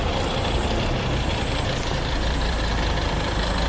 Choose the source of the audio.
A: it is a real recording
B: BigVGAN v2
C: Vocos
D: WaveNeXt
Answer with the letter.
B